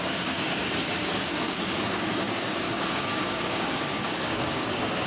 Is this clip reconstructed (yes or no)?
yes